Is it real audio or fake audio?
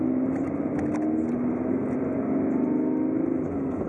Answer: real